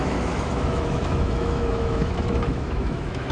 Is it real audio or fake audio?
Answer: fake